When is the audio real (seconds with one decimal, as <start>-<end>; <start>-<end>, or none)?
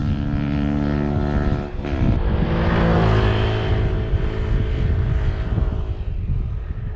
0.0-7.0